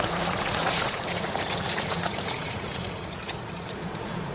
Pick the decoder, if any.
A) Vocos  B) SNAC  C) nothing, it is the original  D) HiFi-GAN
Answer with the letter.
A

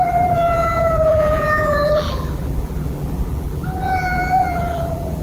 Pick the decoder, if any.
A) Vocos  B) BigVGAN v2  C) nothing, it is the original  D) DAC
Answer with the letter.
B